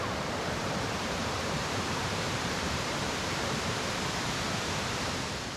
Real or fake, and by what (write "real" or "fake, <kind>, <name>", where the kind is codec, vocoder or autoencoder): fake, vocoder, BigVGAN v2